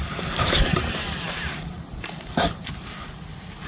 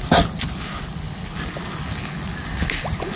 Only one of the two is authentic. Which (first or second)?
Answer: second